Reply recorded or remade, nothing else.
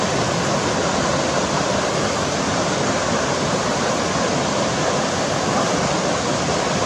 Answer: recorded